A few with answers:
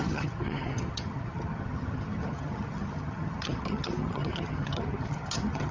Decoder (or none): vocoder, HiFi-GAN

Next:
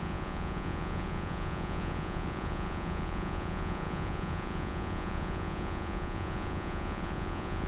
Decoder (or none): vocoder, Vocos